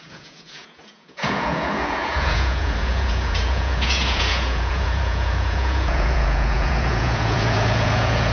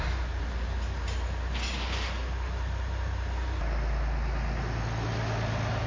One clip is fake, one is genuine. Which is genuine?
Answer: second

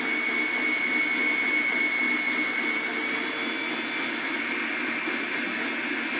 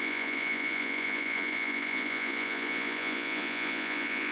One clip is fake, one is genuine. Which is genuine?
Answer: first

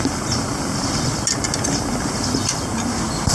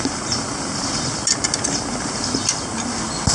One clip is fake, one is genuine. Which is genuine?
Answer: second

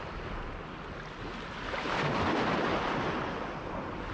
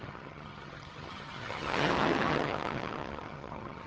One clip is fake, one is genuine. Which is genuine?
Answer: first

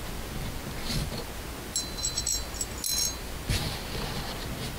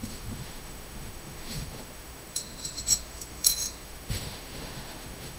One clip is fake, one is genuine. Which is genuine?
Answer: first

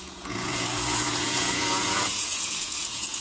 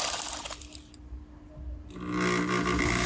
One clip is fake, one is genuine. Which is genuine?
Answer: second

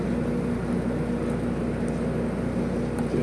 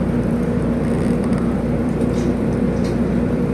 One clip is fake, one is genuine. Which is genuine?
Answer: first